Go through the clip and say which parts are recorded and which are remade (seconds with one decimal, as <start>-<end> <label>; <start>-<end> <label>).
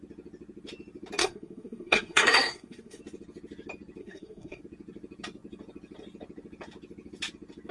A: 0.0-1.2 recorded; 1.2-3.0 remade; 3.0-4.0 recorded; 4.0-4.6 remade; 4.6-7.7 recorded